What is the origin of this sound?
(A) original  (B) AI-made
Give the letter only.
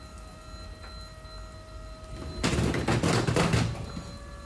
A